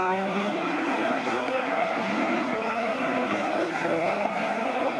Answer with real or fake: fake